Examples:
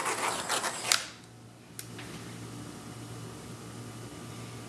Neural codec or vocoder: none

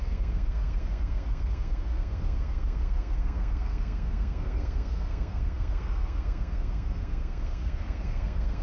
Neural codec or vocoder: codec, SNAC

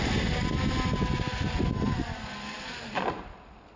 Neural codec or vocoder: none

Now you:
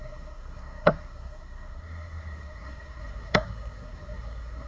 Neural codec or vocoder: codec, SNAC